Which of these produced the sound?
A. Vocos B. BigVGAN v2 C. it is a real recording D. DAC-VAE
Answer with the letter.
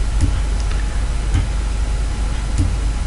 C